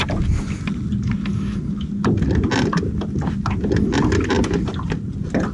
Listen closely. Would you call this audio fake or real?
real